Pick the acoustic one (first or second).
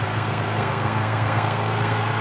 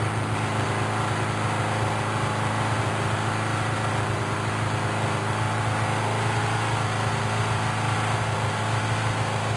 second